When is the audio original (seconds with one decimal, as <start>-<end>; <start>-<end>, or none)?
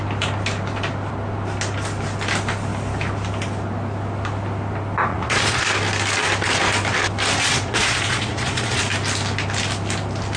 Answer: 0.0-5.1; 5.6-7.4; 8.8-10.4